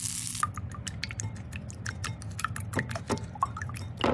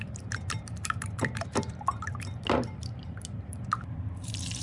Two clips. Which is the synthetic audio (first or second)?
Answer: second